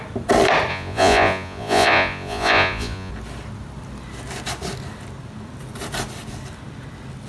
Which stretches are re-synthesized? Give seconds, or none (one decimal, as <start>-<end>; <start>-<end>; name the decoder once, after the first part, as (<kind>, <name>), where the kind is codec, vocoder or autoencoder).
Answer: 0.7-3.1 (vocoder, Vocos)